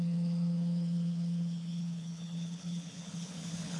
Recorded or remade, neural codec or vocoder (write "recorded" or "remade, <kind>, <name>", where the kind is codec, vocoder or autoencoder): remade, codec, HILCodec